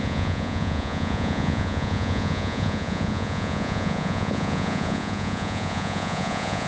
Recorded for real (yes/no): no